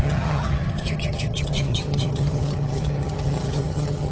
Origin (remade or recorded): remade